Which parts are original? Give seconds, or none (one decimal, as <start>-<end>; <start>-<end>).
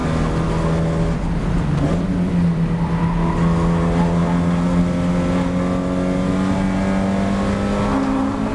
0.0-8.5